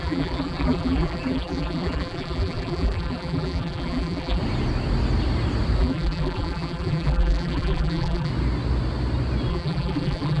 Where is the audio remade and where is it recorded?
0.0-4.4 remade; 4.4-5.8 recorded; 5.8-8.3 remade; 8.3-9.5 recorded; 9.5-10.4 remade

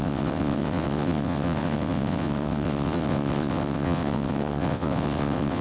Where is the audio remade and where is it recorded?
0.0-5.6 remade